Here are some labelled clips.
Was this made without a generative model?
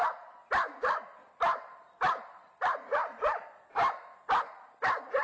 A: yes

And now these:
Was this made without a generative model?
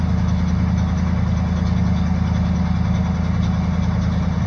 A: yes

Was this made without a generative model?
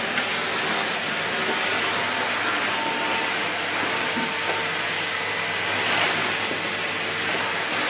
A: yes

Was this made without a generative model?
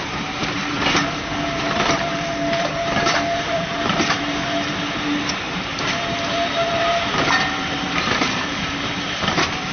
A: no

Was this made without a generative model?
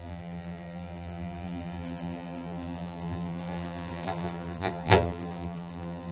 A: no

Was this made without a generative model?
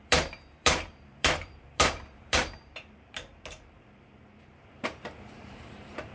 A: no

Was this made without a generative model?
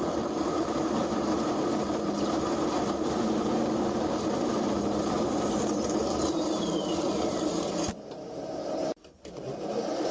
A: no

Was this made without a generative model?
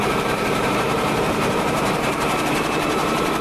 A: no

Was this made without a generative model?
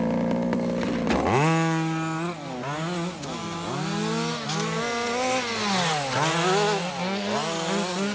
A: yes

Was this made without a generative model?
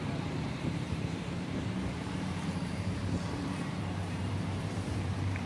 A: no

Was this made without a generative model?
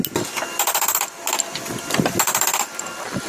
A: yes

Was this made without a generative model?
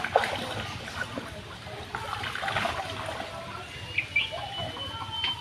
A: yes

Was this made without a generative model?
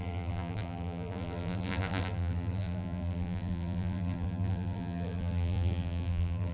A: no